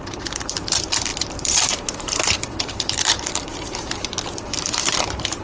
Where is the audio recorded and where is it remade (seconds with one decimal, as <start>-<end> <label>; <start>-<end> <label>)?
0.0-5.4 remade